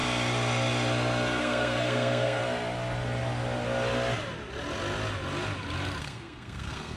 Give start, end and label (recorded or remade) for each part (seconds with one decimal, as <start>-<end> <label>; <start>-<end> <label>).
0.0-1.4 recorded; 1.4-2.4 remade; 2.4-6.0 recorded; 6.0-7.0 remade